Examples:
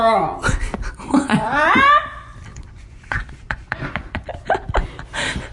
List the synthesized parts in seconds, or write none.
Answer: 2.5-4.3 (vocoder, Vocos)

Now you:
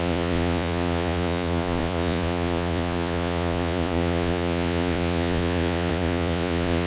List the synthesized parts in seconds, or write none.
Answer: 0.0-6.9 (vocoder, Vocos)